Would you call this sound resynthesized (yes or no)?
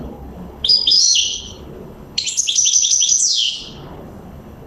yes